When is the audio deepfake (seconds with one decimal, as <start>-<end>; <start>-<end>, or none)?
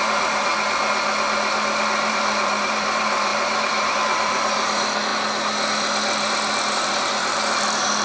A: 0.0-0.5; 2.1-5.1; 6.7-8.0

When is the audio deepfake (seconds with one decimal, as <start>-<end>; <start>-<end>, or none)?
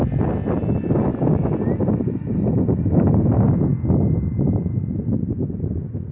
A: none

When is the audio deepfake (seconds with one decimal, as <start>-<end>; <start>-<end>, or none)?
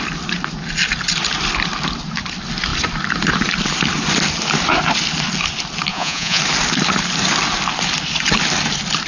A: 5.9-6.4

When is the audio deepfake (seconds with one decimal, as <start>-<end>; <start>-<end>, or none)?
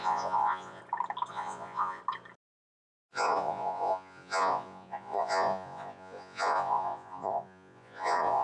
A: 0.0-0.8; 1.3-2.0; 3.1-8.4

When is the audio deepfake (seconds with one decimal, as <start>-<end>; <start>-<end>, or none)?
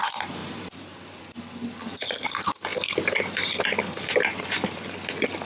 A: 0.4-1.2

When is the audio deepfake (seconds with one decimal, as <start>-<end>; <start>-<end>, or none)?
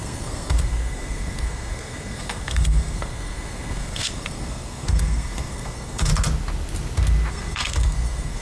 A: 0.0-6.1; 7.3-8.4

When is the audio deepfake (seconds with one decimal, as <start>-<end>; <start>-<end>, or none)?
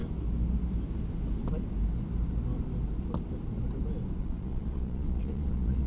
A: 4.2-5.9